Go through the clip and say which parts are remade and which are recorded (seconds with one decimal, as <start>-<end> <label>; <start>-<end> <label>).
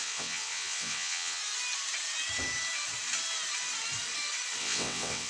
0.0-1.4 remade; 1.4-4.6 recorded; 4.6-5.3 remade